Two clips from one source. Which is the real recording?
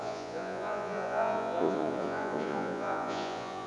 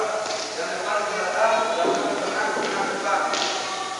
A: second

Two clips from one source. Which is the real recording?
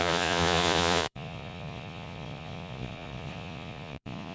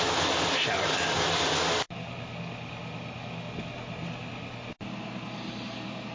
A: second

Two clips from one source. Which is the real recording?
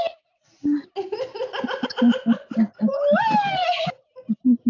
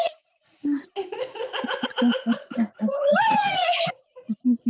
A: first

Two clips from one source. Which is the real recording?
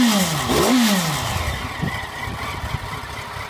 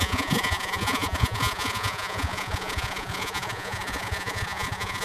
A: first